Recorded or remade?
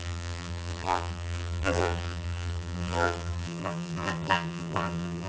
remade